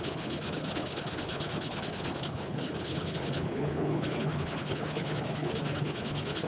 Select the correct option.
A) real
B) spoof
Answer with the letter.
B